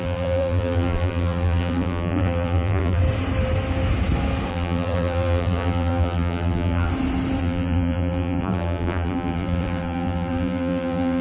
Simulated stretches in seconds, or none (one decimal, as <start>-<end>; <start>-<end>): 0.0-3.0; 4.5-6.9; 7.4-11.2